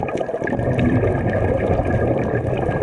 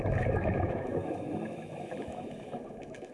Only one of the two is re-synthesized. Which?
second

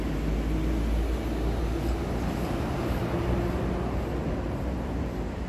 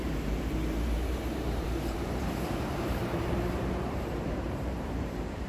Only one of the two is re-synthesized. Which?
second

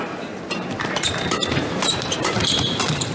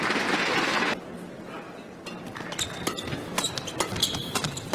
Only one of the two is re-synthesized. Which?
first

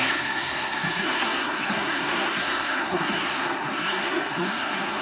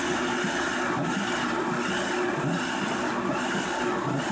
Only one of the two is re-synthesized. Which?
first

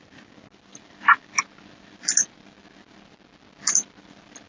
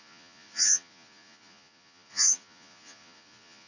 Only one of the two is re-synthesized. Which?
second